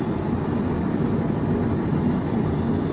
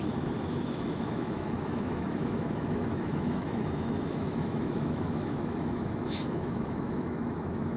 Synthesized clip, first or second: second